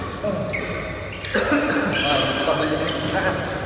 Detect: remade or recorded recorded